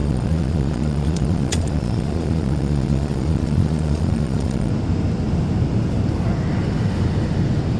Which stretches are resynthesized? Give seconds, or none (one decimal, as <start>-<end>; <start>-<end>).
0.0-4.7